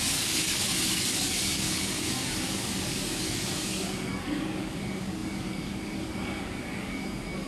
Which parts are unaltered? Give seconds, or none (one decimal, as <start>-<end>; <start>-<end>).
none